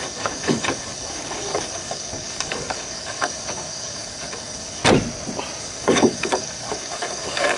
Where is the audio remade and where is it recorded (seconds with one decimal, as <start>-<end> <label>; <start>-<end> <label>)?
0.0-4.8 remade; 4.8-5.6 recorded; 5.6-7.6 remade